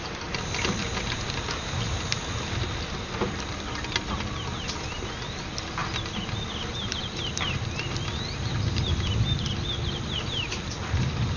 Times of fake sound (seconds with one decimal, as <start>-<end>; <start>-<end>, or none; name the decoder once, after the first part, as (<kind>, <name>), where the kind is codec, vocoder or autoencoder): none